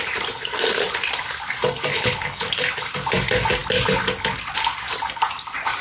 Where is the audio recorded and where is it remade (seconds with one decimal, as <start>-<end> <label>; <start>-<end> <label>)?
0.0-1.9 recorded; 1.9-2.5 remade; 2.5-5.8 recorded

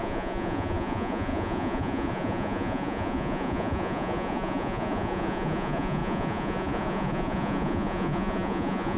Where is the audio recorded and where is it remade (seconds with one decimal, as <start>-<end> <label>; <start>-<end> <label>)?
0.0-9.0 remade

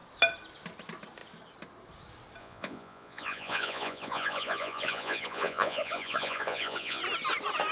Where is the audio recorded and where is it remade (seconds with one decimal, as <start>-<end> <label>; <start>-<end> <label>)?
0.0-2.4 recorded; 2.4-7.0 remade; 7.0-7.7 recorded

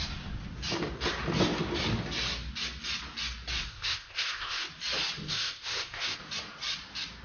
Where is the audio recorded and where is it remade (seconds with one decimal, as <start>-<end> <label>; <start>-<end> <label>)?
0.0-3.7 recorded; 3.7-4.7 remade; 4.7-5.3 recorded; 5.3-6.2 remade; 6.2-7.2 recorded

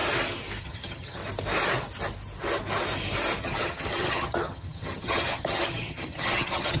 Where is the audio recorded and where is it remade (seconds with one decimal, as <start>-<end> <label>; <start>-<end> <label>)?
0.0-0.6 recorded; 0.6-1.2 remade; 1.2-3.4 recorded; 3.4-6.8 remade

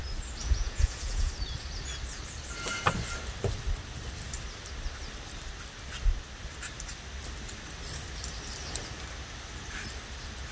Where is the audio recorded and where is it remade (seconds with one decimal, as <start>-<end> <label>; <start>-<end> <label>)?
0.0-0.4 recorded; 0.4-1.3 remade; 1.3-10.5 recorded